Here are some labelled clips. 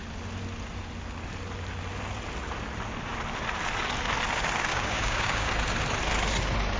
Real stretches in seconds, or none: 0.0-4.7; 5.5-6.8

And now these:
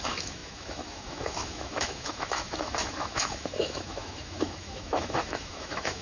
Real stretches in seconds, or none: none

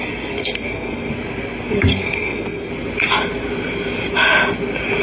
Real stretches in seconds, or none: 0.0-0.4; 1.1-1.9; 2.7-5.0

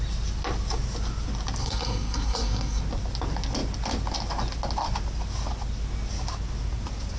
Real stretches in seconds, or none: 0.0-1.6; 2.8-7.2